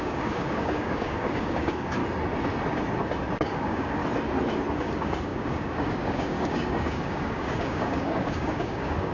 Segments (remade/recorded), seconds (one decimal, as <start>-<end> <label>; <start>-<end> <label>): 0.0-2.0 remade; 2.0-3.4 recorded; 3.4-4.0 remade; 4.0-4.7 recorded; 4.7-9.1 remade